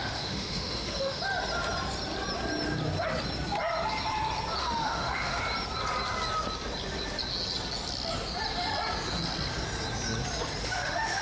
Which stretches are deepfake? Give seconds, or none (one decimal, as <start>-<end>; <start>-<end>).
0.0-1.2; 4.6-5.4; 10.6-11.2